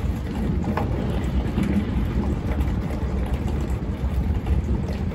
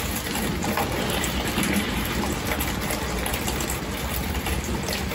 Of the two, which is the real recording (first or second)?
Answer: second